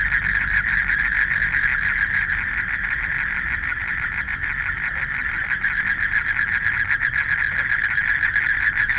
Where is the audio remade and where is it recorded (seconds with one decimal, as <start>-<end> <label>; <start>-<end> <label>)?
0.0-9.0 recorded